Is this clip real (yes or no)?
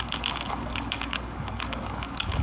no